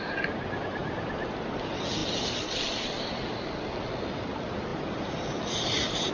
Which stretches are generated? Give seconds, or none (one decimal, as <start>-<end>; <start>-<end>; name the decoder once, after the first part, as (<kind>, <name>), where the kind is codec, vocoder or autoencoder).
4.7-6.1 (vocoder, BigVGAN v2)